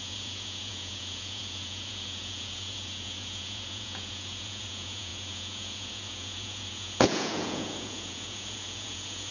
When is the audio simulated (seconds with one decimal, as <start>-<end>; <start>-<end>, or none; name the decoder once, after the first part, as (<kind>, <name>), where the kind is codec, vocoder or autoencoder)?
0.0-9.3 (vocoder, Vocos)